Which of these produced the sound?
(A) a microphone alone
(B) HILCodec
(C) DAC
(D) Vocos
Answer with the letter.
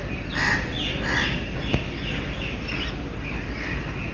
A